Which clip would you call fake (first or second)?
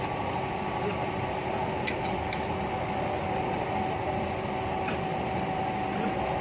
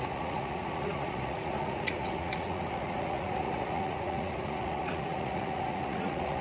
second